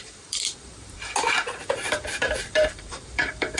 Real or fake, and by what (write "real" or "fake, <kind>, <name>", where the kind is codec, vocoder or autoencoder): fake, vocoder, BigVGAN v2